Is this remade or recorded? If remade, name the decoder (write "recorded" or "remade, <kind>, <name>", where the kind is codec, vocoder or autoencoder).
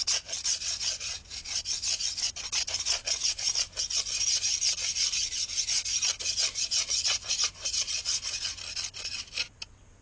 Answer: recorded